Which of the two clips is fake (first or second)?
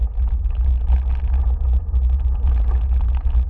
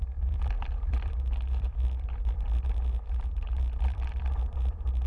second